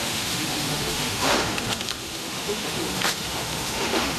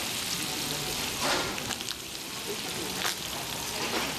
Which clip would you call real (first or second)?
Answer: second